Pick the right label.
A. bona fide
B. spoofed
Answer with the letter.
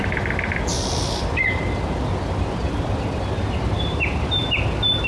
A